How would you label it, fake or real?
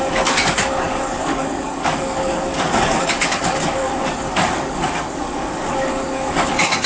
fake